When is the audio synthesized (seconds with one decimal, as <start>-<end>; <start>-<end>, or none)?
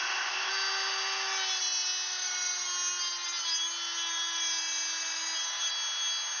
0.0-0.5